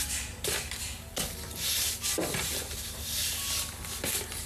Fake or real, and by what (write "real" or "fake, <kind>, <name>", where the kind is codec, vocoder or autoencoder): real